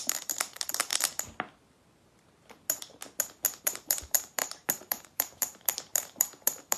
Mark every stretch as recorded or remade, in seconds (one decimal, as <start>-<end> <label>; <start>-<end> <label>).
0.0-0.9 remade; 0.9-3.6 recorded; 3.6-6.8 remade